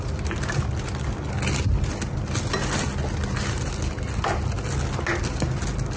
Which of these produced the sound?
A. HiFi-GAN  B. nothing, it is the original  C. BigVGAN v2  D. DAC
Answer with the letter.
B